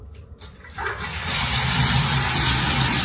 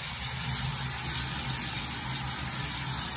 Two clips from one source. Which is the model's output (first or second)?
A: first